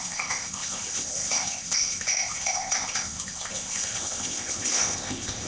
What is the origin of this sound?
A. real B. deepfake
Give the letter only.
B